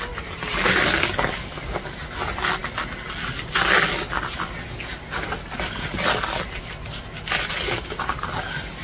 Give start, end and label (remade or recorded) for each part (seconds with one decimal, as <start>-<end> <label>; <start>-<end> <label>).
0.0-8.8 recorded

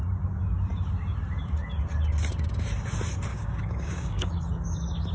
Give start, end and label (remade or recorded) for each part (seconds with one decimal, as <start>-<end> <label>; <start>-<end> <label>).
0.0-3.3 recorded; 3.3-4.3 remade; 4.3-5.1 recorded

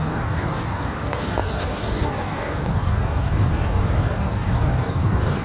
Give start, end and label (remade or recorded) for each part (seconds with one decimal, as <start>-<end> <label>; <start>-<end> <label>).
0.0-5.4 remade

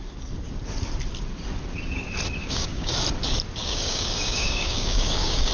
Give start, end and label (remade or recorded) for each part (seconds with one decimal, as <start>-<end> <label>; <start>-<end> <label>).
0.0-2.4 recorded; 2.4-2.9 remade; 2.9-3.6 recorded; 3.6-5.5 remade

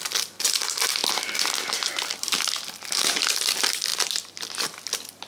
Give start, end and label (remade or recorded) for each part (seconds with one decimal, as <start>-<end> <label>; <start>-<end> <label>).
0.0-5.3 recorded

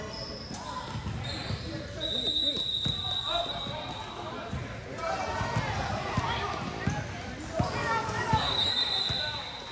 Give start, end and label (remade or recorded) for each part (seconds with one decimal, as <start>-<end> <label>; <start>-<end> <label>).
0.0-7.8 recorded; 7.8-8.7 remade; 8.7-9.7 recorded